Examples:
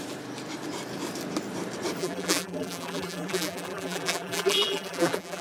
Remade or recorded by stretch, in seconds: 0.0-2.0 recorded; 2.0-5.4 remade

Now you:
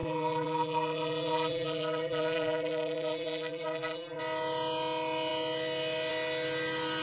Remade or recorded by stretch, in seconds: 0.0-4.2 remade; 4.2-7.0 recorded

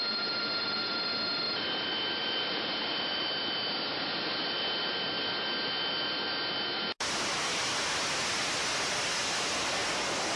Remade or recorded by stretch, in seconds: 0.0-2.2 recorded; 2.2-3.3 remade; 3.3-10.4 recorded

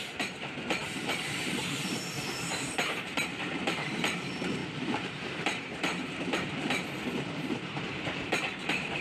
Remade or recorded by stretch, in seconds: 0.0-9.0 remade

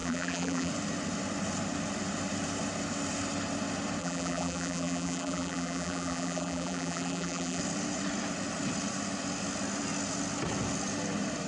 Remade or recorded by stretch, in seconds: 0.0-0.7 remade; 0.7-4.0 recorded; 4.0-7.6 remade; 7.6-11.5 recorded

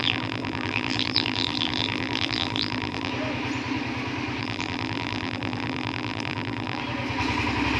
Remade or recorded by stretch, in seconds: 0.0-3.1 remade; 3.1-4.4 recorded; 4.4-6.8 remade; 6.8-7.8 recorded

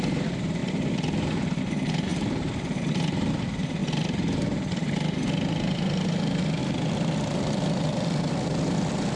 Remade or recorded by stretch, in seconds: 0.0-9.2 remade

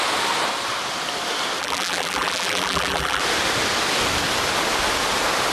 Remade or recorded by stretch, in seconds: 0.0-1.6 recorded; 1.6-3.2 remade; 3.2-5.5 recorded